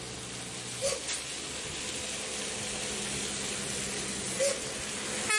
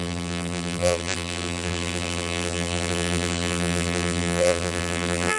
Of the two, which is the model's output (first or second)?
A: second